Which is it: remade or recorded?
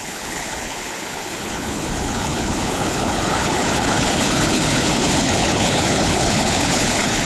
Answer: remade